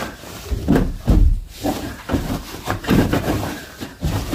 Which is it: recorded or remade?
remade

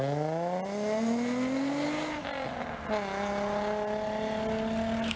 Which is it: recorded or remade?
recorded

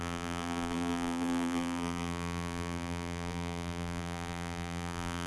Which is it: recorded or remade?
remade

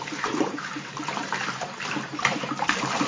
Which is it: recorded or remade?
remade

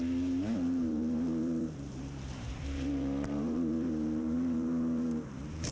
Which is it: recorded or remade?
remade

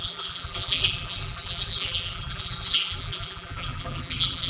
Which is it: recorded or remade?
remade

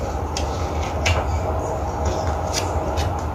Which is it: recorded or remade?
recorded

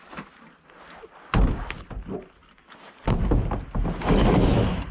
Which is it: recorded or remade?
recorded